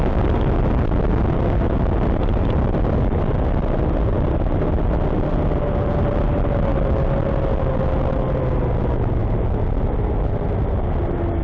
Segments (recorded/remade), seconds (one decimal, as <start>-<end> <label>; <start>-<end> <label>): 0.0-11.4 recorded